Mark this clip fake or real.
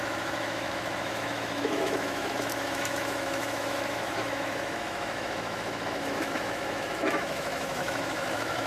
fake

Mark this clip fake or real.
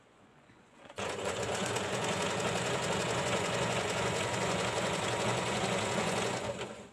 fake